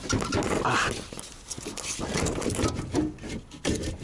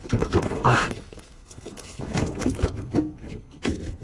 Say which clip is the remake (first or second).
second